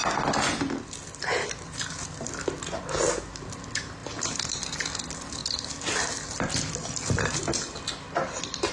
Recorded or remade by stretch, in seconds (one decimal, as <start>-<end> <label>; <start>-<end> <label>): 0.0-8.7 recorded